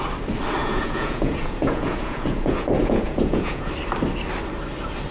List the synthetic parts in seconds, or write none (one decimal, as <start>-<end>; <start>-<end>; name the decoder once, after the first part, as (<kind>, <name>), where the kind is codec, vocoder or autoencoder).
0.6-3.7 (vocoder, Vocos)